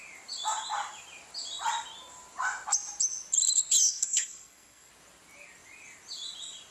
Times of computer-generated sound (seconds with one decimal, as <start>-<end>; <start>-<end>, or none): 3.8-4.9